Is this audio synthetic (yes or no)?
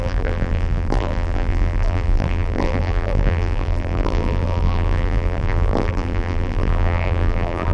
yes